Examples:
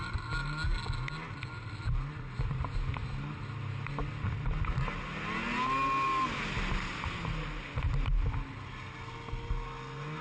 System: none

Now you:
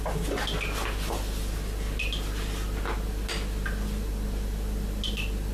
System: none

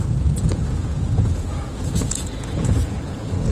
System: vocoder, Vocos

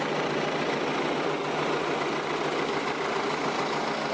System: none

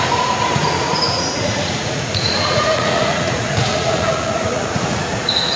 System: vocoder, Vocos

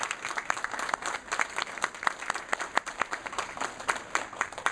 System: none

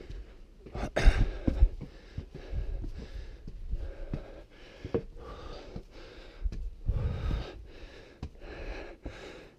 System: none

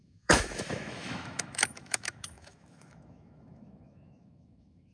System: autoencoder, DAC-VAE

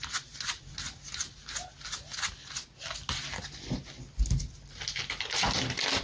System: none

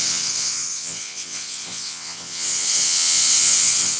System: vocoder, WaveNeXt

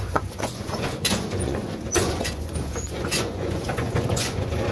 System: vocoder, Vocos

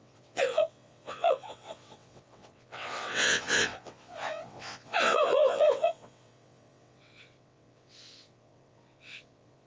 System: vocoder, WaveNeXt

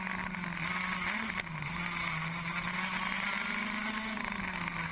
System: none